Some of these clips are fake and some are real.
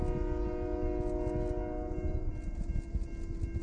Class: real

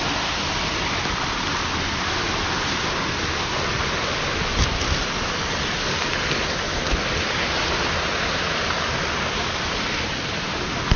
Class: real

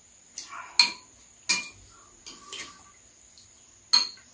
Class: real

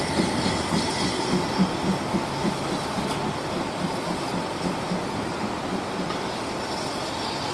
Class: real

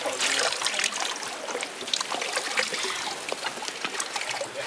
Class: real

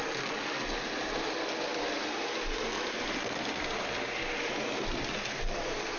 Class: real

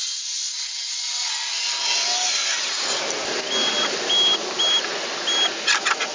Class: real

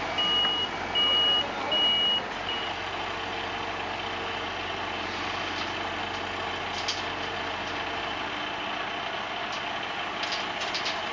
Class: real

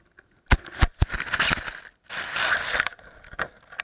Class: real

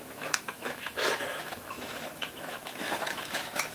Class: fake